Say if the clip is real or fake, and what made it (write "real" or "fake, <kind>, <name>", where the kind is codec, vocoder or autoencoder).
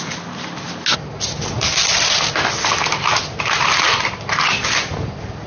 real